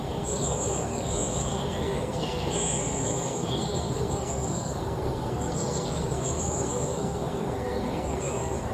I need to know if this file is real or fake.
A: fake